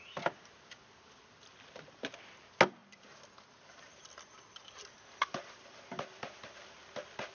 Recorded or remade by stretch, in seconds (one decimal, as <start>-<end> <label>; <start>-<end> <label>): 0.0-7.3 recorded